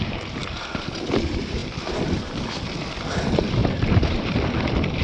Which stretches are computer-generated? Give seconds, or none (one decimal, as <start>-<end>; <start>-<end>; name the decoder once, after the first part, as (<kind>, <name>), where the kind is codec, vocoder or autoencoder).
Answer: 0.0-1.6 (vocoder, BigVGAN v2); 3.1-3.6

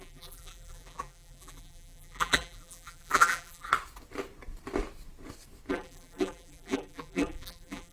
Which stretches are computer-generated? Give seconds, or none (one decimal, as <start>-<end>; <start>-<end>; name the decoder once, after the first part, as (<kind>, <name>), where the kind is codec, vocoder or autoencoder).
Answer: 0.0-3.7 (vocoder, BigVGAN v2); 5.7-7.9

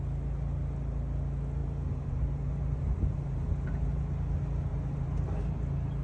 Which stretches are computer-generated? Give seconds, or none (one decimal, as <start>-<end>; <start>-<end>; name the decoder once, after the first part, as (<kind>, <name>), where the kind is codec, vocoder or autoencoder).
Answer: 1.6-4.0 (vocoder, BigVGAN v2); 4.7-5.4

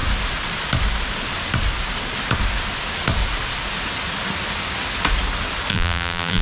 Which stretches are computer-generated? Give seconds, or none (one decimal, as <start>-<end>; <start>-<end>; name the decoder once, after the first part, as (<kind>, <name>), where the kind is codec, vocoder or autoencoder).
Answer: 5.7-6.4 (vocoder, BigVGAN v2)

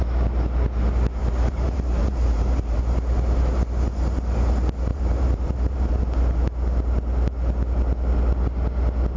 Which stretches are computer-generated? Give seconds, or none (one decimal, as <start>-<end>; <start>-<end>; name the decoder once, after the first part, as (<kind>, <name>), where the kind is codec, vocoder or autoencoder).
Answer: 1.2-2.8 (vocoder, BigVGAN v2); 4.9-6.0

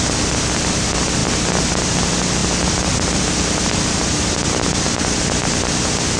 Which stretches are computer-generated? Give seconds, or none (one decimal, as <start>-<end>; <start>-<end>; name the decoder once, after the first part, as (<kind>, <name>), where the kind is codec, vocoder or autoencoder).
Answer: 1.2-2.0 (vocoder, BigVGAN v2); 2.4-5.3

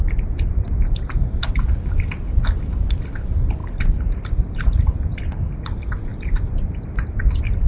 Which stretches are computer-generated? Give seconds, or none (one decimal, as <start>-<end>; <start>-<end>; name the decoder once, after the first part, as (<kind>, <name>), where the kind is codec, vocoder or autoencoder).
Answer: 3.6-5.4 (vocoder, BigVGAN v2); 6.1-6.8